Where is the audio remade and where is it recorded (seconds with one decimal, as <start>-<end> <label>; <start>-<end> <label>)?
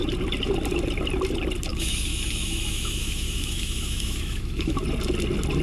0.0-1.7 recorded; 1.7-4.8 remade; 4.8-5.6 recorded